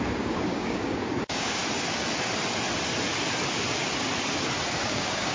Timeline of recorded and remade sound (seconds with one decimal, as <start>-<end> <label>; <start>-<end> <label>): 0.0-1.6 remade; 1.6-4.8 recorded; 4.8-5.3 remade